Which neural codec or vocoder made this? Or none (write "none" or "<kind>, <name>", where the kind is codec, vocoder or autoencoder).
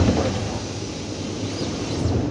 none